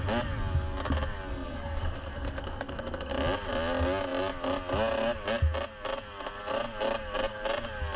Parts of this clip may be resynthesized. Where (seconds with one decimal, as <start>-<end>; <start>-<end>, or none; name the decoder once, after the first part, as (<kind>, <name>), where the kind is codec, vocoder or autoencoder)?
1.3-3.1 (codec, SNAC)